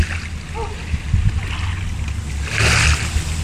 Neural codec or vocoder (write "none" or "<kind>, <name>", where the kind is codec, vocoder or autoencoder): none